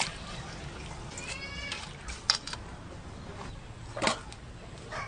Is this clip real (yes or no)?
yes